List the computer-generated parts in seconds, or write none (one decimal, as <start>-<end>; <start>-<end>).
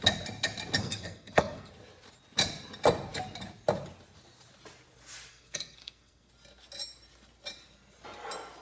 0.8-1.7; 5.3-6.3